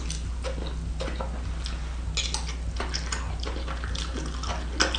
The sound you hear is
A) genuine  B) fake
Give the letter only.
A